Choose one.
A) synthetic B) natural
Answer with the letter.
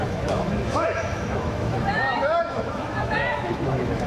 A